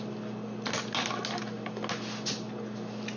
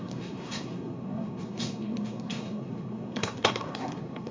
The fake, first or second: second